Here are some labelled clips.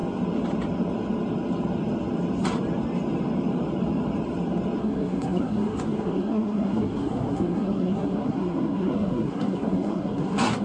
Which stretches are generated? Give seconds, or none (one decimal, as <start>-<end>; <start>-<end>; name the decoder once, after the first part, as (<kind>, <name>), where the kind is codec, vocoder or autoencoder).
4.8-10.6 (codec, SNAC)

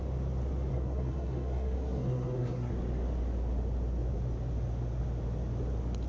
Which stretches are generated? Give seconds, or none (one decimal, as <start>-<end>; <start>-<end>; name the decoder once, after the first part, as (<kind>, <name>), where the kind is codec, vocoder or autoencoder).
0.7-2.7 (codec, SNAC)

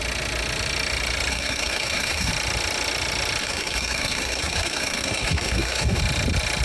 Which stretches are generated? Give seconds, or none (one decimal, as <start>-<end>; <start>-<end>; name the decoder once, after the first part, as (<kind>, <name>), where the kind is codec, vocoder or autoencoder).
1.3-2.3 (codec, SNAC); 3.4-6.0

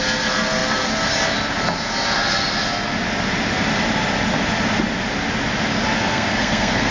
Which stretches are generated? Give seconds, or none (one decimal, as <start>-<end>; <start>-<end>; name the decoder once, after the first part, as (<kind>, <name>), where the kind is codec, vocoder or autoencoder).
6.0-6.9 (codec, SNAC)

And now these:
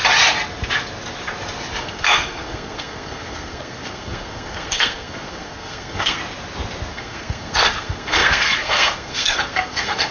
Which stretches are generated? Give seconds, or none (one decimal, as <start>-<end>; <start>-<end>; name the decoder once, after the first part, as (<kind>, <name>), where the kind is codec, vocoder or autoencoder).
1.8-6.2 (codec, SNAC); 6.9-10.1

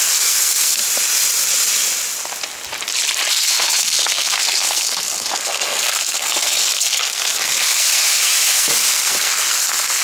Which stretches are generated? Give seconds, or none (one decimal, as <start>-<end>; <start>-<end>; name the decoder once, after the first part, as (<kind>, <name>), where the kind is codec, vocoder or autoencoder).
0.0-0.8 (codec, SNAC); 3.3-10.0